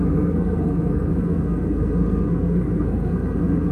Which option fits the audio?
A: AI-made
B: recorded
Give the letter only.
A